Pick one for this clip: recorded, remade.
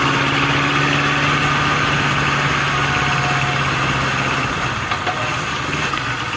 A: recorded